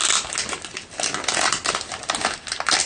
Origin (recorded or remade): recorded